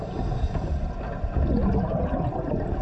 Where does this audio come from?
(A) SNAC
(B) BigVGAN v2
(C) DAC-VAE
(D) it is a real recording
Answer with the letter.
D